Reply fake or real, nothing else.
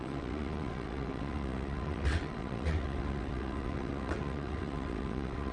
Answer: fake